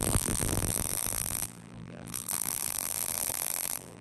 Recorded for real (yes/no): no